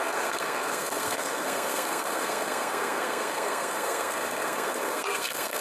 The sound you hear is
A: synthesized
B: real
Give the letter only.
A